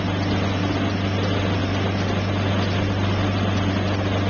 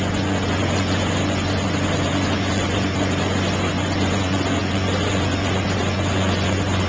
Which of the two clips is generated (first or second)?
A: second